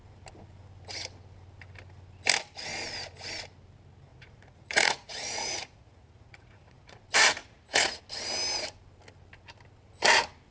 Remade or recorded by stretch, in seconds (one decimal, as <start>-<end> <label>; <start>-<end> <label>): 0.0-4.1 recorded; 4.1-7.0 remade; 7.0-7.4 recorded; 7.4-8.0 remade; 8.0-10.5 recorded